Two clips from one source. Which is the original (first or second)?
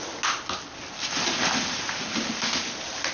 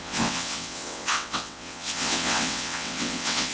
first